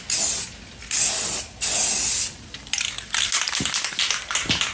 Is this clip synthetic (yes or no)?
no